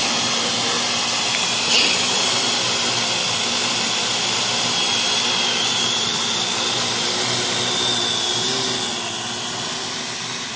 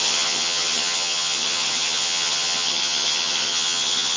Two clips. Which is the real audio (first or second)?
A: first